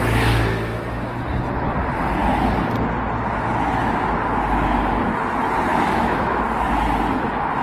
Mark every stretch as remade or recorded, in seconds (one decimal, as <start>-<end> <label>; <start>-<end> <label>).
0.0-5.7 recorded; 5.7-6.4 remade; 6.4-7.6 recorded